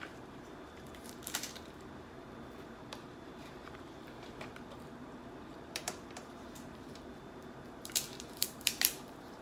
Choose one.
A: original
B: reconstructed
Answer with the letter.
B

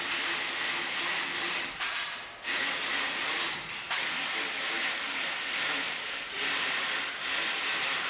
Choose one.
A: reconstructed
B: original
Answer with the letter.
A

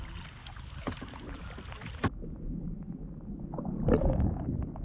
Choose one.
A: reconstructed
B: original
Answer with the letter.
B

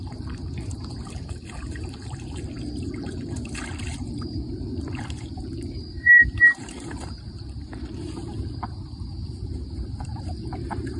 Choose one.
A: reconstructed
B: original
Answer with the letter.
A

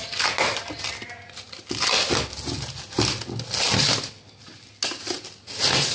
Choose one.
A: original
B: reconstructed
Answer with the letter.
A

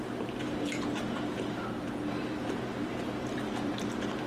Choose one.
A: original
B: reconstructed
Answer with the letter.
B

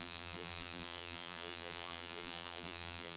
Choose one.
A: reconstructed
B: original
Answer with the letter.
A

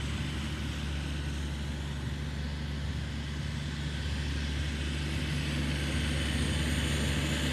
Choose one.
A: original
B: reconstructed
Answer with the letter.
A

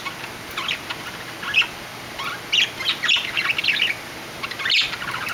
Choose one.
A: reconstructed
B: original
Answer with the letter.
B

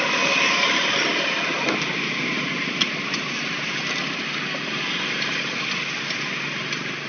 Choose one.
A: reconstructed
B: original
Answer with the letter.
B